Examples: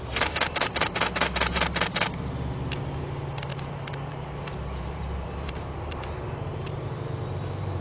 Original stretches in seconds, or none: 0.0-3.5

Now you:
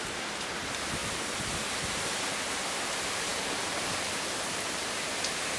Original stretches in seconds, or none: 1.0-1.8

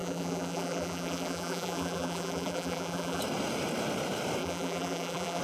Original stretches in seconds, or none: 3.2-4.4

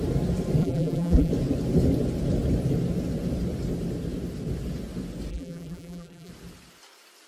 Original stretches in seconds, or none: 0.0-0.6; 1.3-5.3; 6.3-7.3

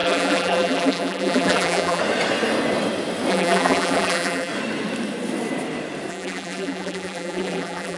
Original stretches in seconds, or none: 2.0-3.3; 4.5-6.1

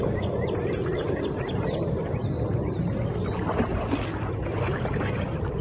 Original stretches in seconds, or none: 0.8-1.6; 2.2-4.3